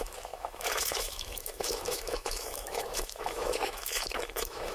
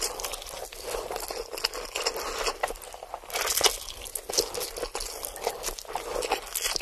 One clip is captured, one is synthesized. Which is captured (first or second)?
second